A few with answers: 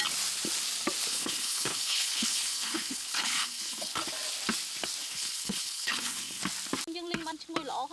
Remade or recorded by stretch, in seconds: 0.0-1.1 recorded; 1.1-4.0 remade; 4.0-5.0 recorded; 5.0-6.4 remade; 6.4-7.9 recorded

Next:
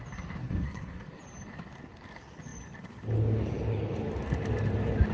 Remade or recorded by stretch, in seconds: 0.0-0.4 recorded; 0.4-1.2 remade; 1.2-5.1 recorded

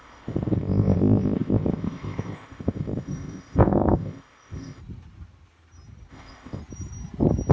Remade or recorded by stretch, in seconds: 0.0-4.8 remade; 4.8-6.1 recorded; 6.1-6.6 remade; 6.6-7.5 recorded

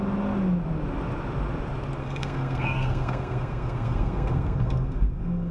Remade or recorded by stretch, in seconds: 0.0-2.0 recorded; 2.0-5.5 remade